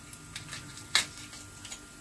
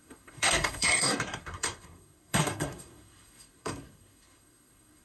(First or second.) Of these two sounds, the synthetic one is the second